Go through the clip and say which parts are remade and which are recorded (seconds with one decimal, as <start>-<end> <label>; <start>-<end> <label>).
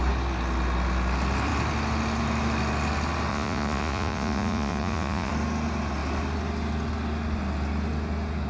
0.0-3.3 recorded; 3.3-5.3 remade; 5.3-8.5 recorded